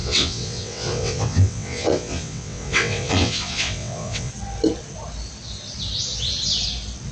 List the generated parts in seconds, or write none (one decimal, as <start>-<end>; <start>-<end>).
0.0-4.3